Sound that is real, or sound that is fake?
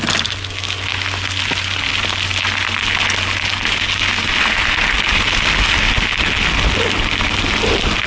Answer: real